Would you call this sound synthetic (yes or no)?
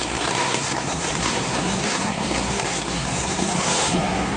yes